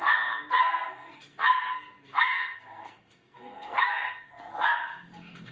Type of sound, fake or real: fake